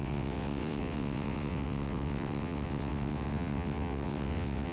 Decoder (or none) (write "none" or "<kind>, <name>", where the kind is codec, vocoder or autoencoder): vocoder, WaveNeXt